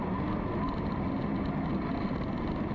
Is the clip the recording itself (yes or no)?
yes